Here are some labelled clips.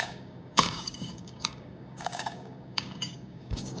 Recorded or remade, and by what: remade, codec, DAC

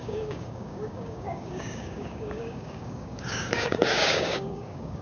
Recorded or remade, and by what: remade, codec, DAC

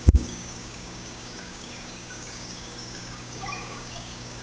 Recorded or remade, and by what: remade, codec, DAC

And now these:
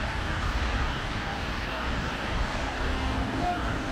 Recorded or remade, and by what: remade, codec, DAC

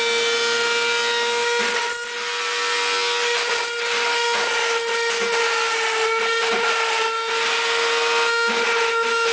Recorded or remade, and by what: recorded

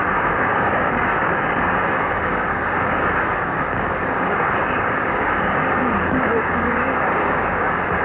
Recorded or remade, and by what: remade, codec, DAC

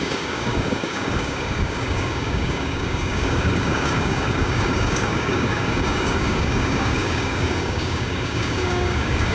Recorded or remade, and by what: remade, codec, DAC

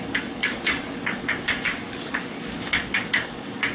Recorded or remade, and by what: remade, codec, DAC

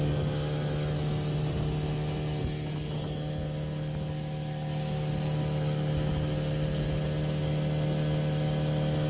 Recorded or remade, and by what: recorded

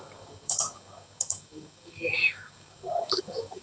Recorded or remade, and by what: remade, codec, DAC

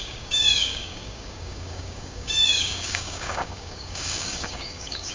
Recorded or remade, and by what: remade, codec, DAC